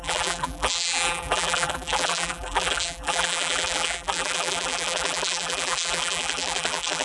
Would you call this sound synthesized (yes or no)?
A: yes